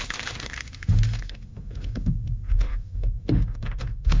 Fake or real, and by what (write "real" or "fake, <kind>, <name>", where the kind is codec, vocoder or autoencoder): fake, autoencoder, DAC-VAE